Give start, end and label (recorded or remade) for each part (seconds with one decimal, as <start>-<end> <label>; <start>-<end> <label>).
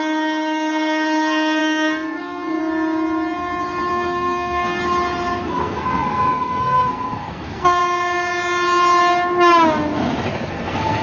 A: 0.0-2.6 remade; 2.6-3.9 recorded; 3.9-4.8 remade; 4.8-5.4 recorded; 5.4-7.8 remade; 7.8-10.5 recorded; 10.5-11.0 remade